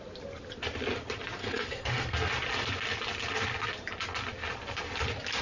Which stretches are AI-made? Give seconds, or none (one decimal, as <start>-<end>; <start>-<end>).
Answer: 1.4-2.3

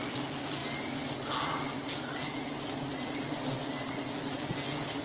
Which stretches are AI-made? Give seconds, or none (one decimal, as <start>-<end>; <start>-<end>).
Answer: none

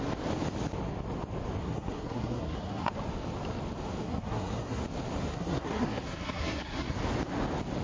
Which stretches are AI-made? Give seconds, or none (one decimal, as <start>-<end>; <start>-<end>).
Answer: 1.6-2.9; 4.0-4.8; 5.3-7.0

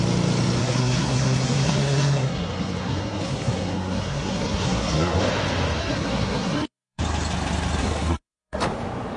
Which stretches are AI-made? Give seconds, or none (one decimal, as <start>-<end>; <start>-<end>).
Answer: 0.6-5.2; 5.8-7.0; 7.8-8.6

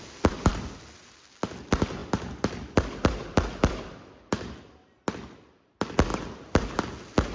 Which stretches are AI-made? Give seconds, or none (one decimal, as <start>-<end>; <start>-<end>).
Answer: none

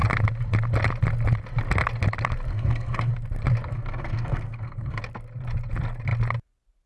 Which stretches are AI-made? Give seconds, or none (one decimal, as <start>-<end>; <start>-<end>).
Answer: 2.5-3.1; 3.7-5.0